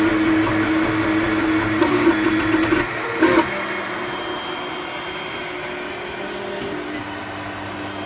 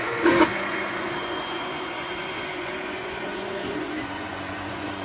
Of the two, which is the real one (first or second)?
first